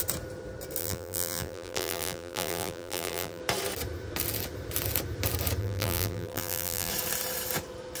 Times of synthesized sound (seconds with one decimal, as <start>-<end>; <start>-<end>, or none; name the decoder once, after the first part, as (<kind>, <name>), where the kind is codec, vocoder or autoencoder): 0.8-3.4 (vocoder, BigVGAN v2); 5.6-6.9